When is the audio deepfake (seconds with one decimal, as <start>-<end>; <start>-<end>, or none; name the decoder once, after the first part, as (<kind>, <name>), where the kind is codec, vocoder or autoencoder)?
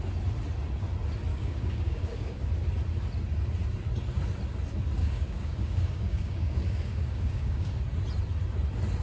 1.3-2.5 (codec, DAC); 5.0-7.8